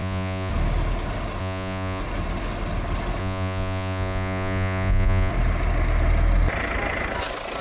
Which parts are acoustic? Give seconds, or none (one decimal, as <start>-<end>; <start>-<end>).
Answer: 0.5-1.4; 2.0-3.2; 5.3-7.6